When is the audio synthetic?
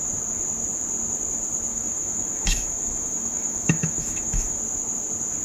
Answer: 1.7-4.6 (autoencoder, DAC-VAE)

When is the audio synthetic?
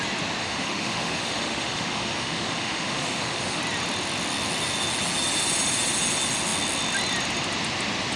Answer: 0.4-3.6 (autoencoder, DAC-VAE)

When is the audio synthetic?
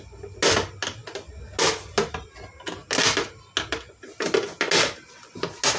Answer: none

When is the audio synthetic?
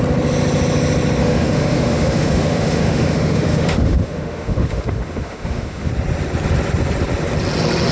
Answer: 1.2-5.9 (autoencoder, DAC-VAE)